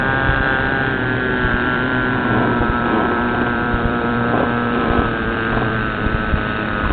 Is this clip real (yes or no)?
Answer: no